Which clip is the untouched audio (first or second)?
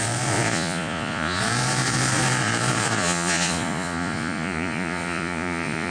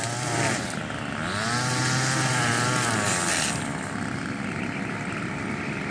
second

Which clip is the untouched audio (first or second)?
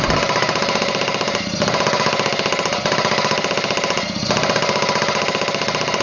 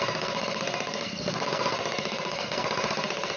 first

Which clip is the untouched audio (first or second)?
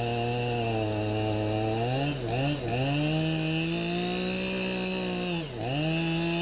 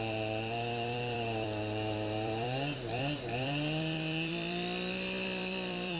first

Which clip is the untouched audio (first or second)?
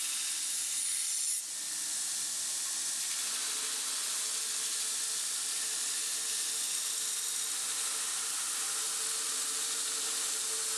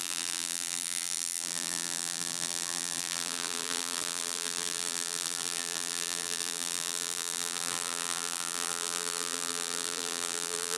first